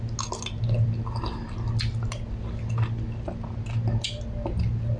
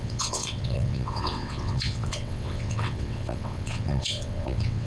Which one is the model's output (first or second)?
second